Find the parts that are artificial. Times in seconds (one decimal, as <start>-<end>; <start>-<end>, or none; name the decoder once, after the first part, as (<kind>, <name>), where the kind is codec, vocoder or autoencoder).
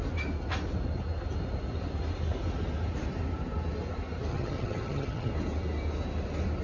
4.3-5.3 (vocoder, HiFi-GAN)